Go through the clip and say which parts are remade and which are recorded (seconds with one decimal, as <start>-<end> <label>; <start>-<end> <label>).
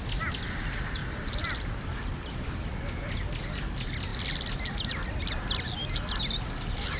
0.0-1.0 recorded; 1.0-2.8 remade; 2.8-7.0 recorded